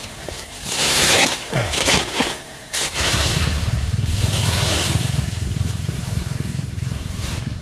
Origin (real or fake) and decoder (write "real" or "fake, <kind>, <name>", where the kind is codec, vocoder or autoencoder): fake, codec, SNAC